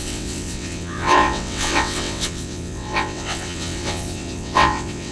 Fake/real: fake